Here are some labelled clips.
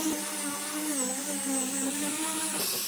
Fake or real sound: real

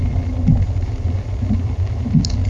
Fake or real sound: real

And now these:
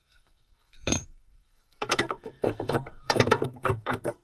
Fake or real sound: fake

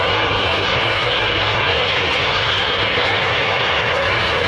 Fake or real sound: fake